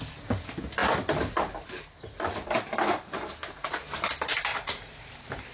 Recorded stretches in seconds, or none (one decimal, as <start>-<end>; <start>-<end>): 0.0-4.5; 5.1-5.5